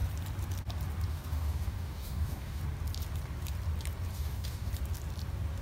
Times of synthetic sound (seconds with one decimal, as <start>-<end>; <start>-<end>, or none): 1.1-2.6; 4.1-4.7